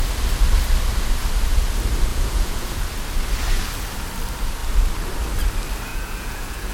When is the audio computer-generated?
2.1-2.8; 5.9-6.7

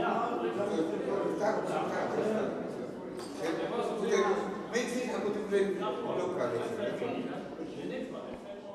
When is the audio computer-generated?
none

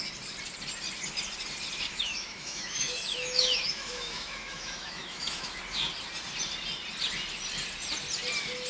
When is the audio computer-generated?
1.9-5.6

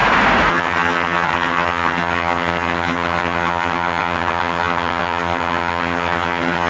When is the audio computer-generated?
0.5-6.7

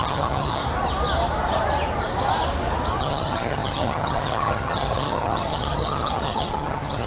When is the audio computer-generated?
0.0-0.6; 3.0-7.1